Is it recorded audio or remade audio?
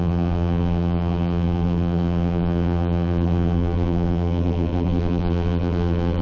remade